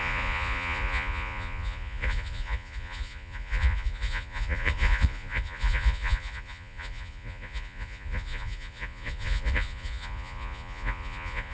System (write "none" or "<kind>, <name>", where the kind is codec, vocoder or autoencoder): vocoder, Vocos